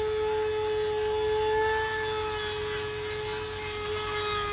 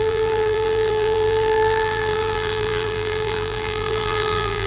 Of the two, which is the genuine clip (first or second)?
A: first